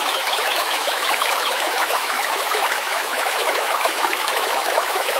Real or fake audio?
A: fake